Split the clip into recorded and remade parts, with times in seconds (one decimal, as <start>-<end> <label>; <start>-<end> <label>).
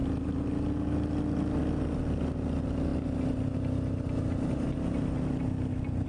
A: 0.0-6.1 recorded